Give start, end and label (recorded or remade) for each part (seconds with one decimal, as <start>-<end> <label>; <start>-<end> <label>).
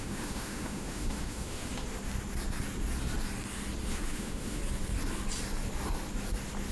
0.0-1.7 remade; 1.7-3.9 recorded; 3.9-4.6 remade; 4.6-6.7 recorded